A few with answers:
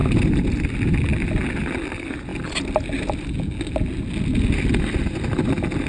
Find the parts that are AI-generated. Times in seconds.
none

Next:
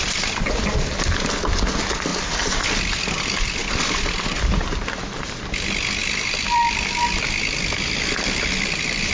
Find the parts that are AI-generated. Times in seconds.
2.1-3.2 (vocoder, BigVGAN v2); 6.0-6.6

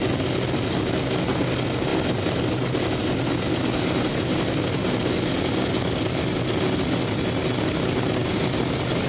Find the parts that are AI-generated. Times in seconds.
none

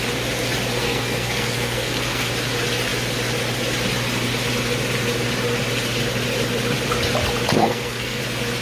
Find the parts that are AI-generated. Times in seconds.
0.8-2.3 (codec, SNAC); 7.6-8.2

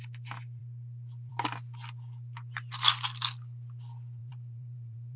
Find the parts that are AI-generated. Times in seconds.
4.2-5.2 (vocoder, BigVGAN v2)

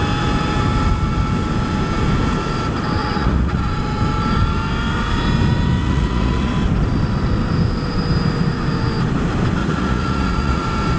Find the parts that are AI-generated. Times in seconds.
3.0-3.6 (vocoder, Vocos); 5.8-6.5; 9.6-10.6

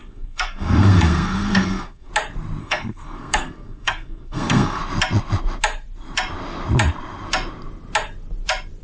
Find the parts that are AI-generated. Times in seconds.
0.0-2.1 (codec, SNAC); 2.6-4.8

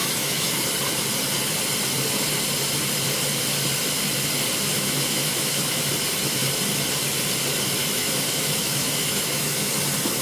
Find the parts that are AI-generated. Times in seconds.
0.0-0.6 (autoencoder, DAC-VAE); 4.7-5.9; 7.8-9.7